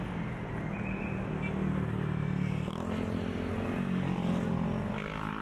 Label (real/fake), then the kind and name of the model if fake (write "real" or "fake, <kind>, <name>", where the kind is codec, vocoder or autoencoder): real